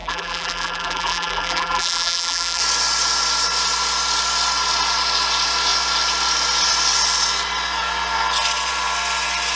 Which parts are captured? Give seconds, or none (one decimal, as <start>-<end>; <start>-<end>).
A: 2.6-9.6

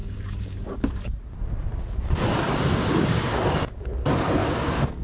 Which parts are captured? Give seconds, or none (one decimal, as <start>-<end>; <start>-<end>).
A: 1.0-2.7; 3.9-4.4

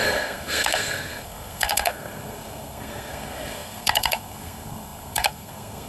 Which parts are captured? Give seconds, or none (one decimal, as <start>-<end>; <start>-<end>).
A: none

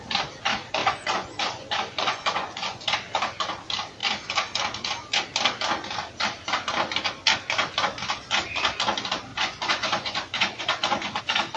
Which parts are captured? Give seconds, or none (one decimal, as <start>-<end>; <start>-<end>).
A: 0.0-0.8; 2.8-9.3; 11.2-11.6

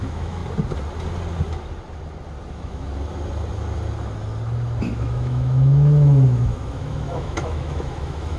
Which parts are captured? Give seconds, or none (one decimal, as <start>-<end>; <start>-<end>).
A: 0.4-2.5; 2.9-4.8

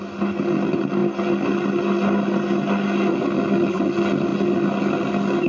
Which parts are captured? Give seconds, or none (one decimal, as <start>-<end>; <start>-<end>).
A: 0.0-5.5